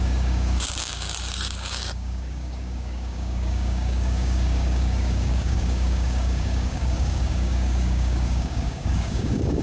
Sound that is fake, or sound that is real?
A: fake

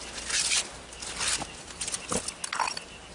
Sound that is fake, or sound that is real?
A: real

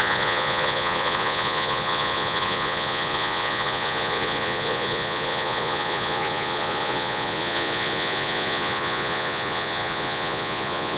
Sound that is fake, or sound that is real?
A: fake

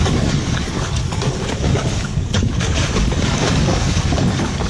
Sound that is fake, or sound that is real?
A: fake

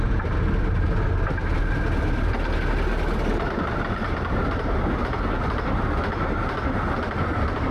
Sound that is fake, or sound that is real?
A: real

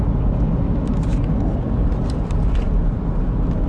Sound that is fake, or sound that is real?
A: real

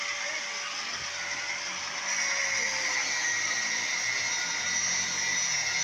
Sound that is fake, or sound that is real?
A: real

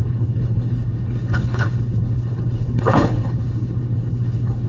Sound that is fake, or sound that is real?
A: fake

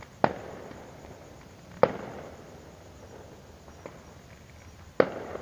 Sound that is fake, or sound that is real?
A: real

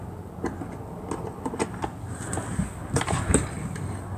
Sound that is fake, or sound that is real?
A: real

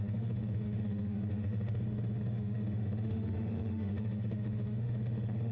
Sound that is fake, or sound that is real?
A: fake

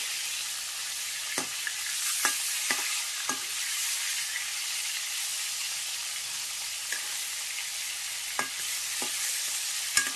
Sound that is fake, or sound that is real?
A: real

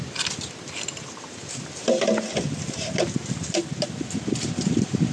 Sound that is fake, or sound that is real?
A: real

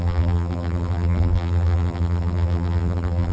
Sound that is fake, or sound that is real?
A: fake